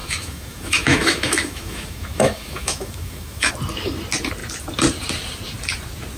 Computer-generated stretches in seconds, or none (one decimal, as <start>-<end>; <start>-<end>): 0.0-3.5